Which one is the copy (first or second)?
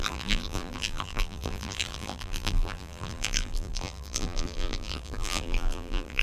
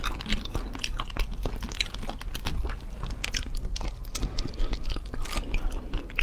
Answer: first